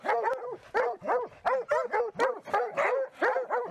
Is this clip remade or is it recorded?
recorded